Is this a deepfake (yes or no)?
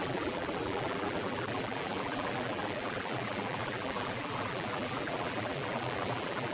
yes